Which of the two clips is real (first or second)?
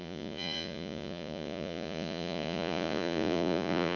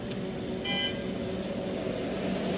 second